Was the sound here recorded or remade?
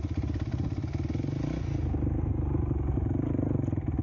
recorded